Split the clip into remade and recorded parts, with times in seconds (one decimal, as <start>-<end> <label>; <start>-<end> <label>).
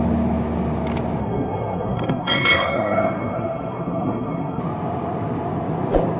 0.0-1.2 recorded; 1.2-4.6 remade; 4.6-6.2 recorded